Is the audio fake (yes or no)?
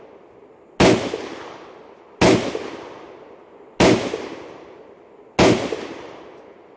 no